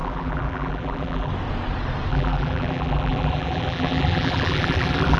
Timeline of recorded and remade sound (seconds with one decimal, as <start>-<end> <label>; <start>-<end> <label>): 0.0-1.3 remade; 1.3-2.1 recorded; 2.1-5.2 remade